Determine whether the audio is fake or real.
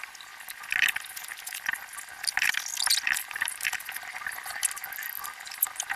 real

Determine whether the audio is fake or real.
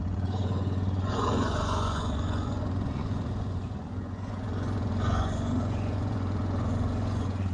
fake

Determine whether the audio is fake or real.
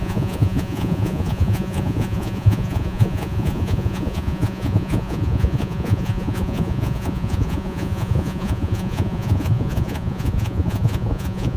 fake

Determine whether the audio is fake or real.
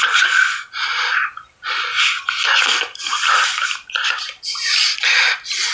real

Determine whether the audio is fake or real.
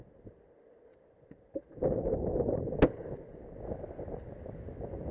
real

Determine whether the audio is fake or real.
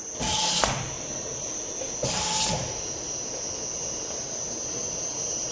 real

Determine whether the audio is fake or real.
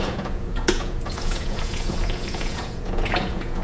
fake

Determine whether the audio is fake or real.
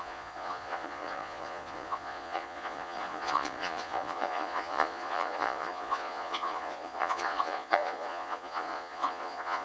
fake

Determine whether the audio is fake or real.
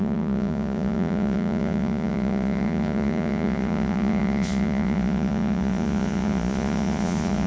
fake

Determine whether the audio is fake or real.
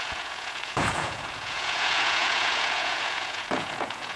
fake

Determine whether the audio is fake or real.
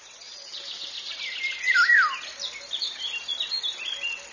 real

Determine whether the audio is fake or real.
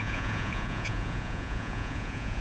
fake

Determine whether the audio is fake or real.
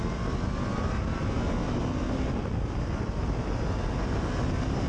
real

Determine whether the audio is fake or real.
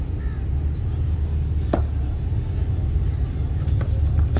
real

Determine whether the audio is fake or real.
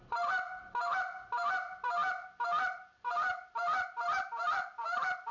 real